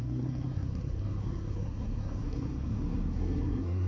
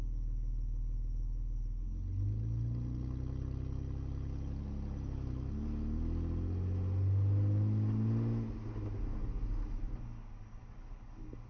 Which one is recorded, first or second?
second